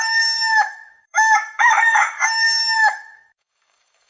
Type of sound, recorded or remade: remade